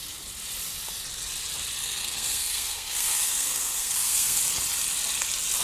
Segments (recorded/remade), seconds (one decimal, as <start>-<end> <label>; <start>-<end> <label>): 0.0-1.8 recorded; 1.8-4.4 remade; 4.4-5.6 recorded